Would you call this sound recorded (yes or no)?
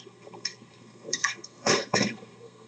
no